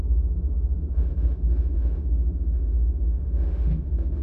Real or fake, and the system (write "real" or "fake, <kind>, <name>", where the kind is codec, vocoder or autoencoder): fake, autoencoder, DAC-VAE